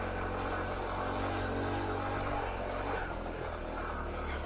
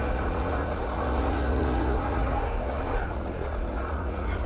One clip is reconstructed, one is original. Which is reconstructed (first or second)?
second